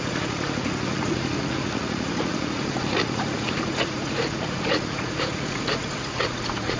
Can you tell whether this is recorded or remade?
remade